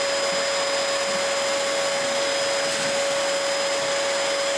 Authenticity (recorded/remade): recorded